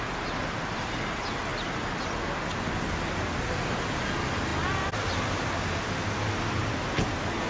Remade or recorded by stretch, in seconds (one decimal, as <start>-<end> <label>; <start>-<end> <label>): 0.0-7.5 recorded